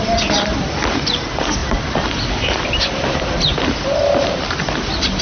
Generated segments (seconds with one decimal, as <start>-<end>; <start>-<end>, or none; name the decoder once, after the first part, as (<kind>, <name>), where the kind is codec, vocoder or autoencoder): none